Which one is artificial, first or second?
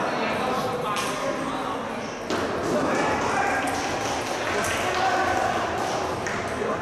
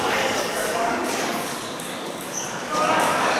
second